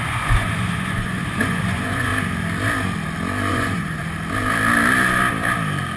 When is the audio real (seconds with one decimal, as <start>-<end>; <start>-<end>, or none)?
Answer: 2.1-3.5; 4.0-6.0